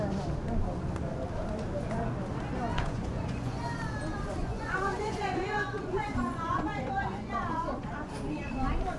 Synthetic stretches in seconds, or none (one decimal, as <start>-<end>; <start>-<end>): 2.7-3.6; 4.4-8.1